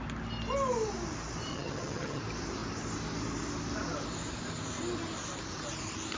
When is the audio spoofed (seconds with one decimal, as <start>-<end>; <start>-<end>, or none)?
1.5-2.2